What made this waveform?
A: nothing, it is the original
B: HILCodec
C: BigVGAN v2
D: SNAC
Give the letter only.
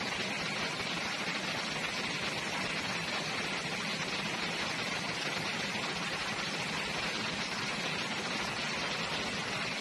A